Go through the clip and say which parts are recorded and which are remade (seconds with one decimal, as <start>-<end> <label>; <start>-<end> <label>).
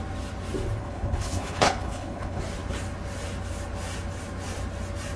0.0-0.8 recorded; 0.8-2.4 remade; 2.4-5.2 recorded